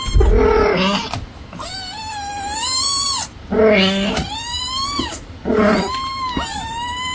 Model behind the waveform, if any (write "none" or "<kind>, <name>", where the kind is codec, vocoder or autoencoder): none